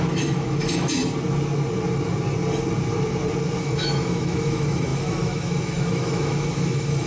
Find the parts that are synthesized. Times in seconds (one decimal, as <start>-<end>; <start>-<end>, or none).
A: 0.0-1.0; 3.6-7.1